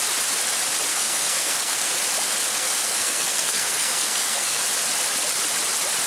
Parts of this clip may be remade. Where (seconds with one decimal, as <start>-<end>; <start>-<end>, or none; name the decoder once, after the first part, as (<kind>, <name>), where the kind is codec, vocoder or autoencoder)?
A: 0.9-1.9 (codec, SNAC); 2.5-4.6